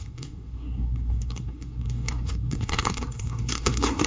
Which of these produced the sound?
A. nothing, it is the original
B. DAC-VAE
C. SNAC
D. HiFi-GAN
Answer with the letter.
C